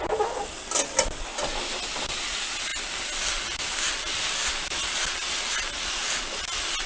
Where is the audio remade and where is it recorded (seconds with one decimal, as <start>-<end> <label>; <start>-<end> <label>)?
0.0-6.9 recorded